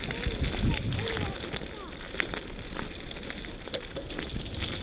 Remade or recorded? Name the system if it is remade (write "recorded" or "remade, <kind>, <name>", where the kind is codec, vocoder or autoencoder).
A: recorded